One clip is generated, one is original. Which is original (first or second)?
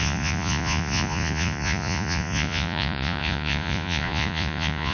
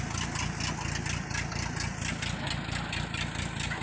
second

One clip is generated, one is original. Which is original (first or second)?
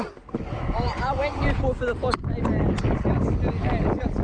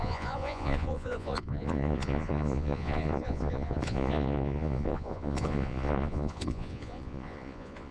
first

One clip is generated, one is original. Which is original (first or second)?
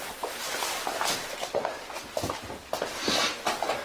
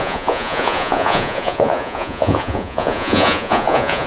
first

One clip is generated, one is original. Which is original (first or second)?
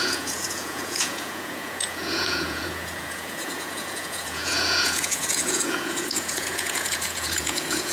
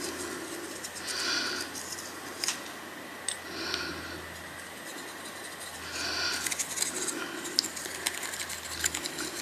second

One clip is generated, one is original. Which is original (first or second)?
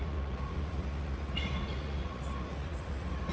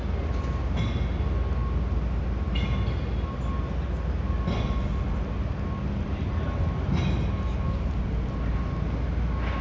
second